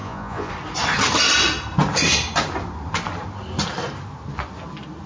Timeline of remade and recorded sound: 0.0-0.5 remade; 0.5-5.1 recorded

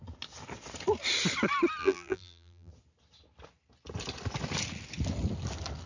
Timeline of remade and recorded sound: 0.0-1.8 recorded; 1.8-2.7 remade; 2.7-5.9 recorded

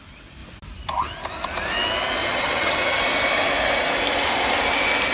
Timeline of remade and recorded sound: 0.0-2.2 recorded; 2.2-3.0 remade; 3.0-5.1 recorded

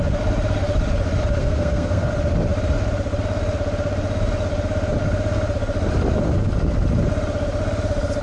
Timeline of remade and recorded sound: 0.0-1.4 recorded; 1.4-2.1 remade; 2.1-8.2 recorded